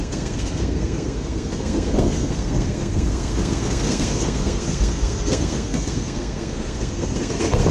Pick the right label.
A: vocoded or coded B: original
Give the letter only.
A